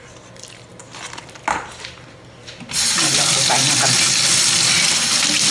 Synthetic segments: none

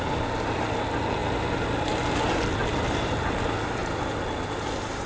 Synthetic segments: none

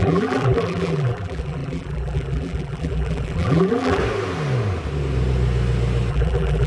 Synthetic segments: 0.0-4.0 (vocoder, BigVGAN v2); 6.1-6.7